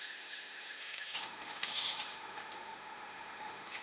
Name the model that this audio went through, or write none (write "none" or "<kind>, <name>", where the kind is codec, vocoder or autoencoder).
autoencoder, DAC-VAE